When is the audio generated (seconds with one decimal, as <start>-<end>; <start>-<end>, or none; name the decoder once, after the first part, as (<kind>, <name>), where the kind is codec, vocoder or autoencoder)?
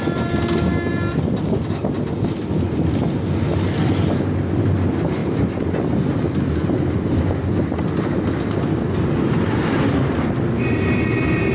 none